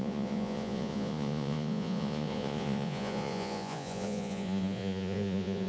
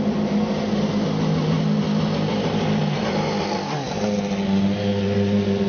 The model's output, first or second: first